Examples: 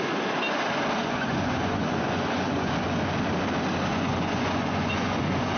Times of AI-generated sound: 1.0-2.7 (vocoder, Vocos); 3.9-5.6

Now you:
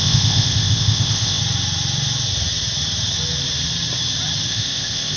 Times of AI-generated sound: 0.0-1.4 (codec, ZipCodec); 4.5-5.2

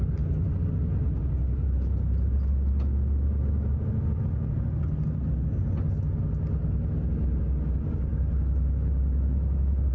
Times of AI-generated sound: none

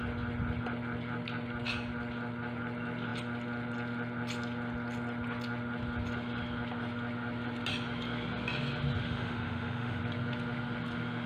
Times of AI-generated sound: 9.0-10.0 (autoencoder, DAC-VAE)

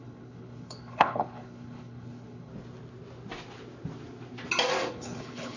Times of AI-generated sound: 0.0-2.5 (codec, HILCodec); 4.9-5.6